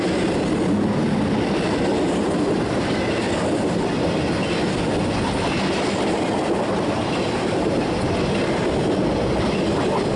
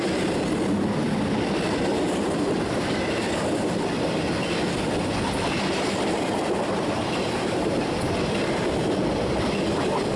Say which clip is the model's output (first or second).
second